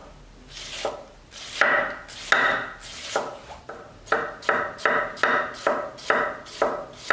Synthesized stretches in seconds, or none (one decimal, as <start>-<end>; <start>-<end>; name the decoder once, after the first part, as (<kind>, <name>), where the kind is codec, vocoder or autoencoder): none